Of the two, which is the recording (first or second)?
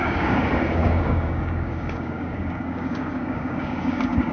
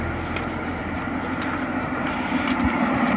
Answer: second